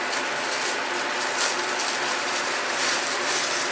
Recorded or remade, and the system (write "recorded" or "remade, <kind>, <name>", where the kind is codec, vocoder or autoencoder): remade, vocoder, BigVGAN v2